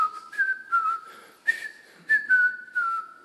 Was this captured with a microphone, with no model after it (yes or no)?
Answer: yes